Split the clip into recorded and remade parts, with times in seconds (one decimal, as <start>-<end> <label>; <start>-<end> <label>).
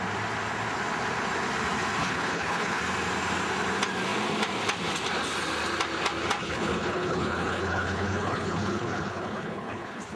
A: 0.0-2.0 recorded; 2.0-2.8 remade; 2.8-6.4 recorded; 6.4-10.2 remade